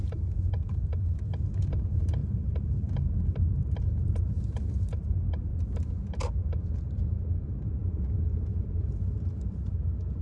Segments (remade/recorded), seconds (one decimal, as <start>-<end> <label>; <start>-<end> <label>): 0.0-5.5 remade; 5.5-6.1 recorded; 6.1-10.2 remade